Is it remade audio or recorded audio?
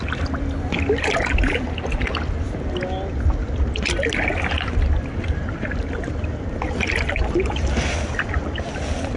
recorded